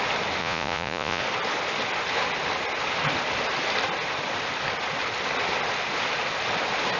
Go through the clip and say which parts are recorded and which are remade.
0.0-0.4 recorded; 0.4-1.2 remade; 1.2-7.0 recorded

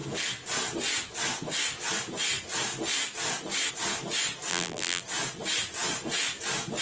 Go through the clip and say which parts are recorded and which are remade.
0.0-4.5 recorded; 4.5-5.0 remade; 5.0-6.8 recorded

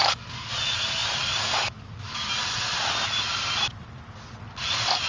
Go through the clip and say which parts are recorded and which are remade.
0.0-5.1 recorded

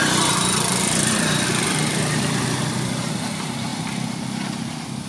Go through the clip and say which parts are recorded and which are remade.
0.0-3.1 remade; 3.1-5.1 recorded

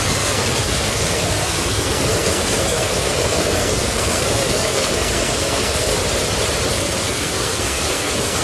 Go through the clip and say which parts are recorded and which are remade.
0.0-5.9 remade; 5.9-6.7 recorded; 6.7-8.4 remade

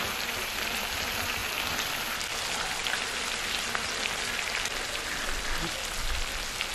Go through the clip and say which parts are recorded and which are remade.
0.0-6.7 recorded

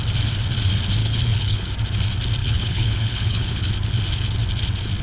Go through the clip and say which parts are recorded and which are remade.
0.0-1.0 recorded; 1.0-1.7 remade; 1.7-2.4 recorded; 2.4-3.7 remade; 3.7-5.0 recorded